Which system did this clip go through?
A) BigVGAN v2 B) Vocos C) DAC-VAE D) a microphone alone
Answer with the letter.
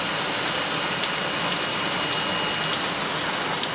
D